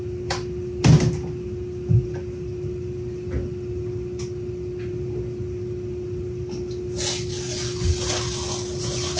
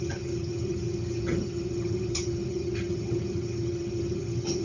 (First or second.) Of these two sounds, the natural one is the first